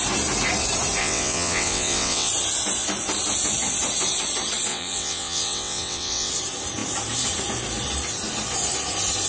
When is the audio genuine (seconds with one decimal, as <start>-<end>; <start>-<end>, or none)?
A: 0.0-1.0; 2.3-4.7; 6.3-9.3